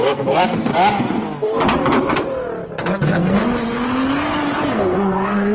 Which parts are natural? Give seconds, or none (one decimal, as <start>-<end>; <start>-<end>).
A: 0.7-3.0; 3.4-4.7